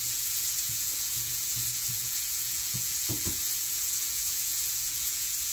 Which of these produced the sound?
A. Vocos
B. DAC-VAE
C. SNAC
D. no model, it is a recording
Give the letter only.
A